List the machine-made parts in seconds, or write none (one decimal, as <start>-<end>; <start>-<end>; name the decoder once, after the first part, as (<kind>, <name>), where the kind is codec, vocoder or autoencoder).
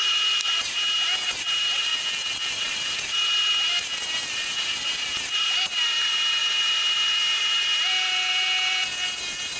0.0-1.9 (vocoder, BigVGAN v2); 2.5-9.6